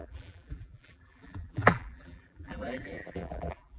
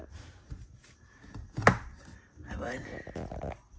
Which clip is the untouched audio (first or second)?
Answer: second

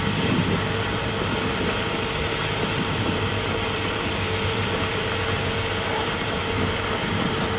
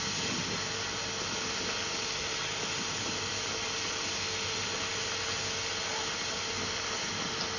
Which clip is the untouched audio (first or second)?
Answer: second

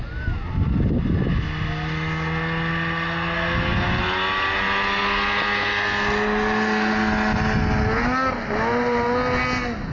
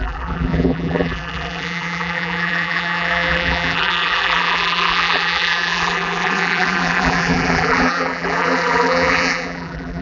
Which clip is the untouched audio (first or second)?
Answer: first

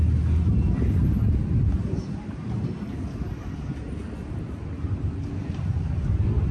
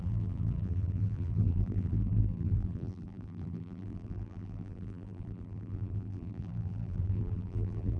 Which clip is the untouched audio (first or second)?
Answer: first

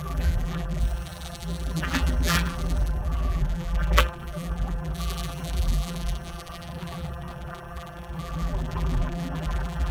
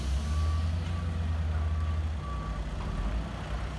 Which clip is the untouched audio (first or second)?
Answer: second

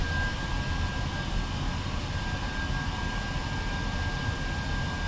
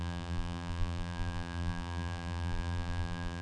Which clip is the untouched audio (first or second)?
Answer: first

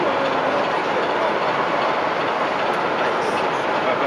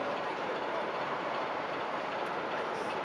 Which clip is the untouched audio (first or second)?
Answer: first